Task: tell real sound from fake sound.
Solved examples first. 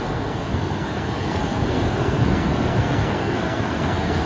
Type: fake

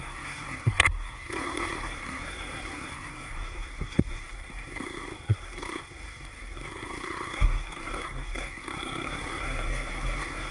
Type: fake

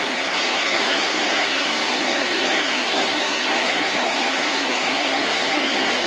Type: fake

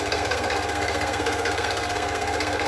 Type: fake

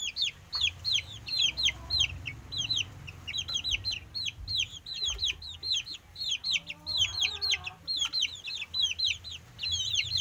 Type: real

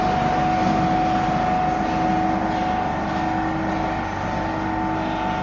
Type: real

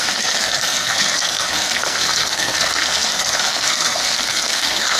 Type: fake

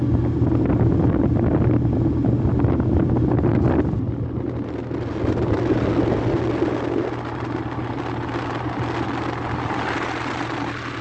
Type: real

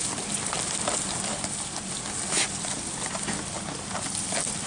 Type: real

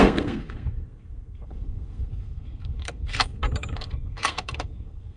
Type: fake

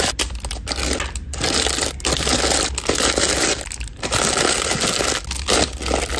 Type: real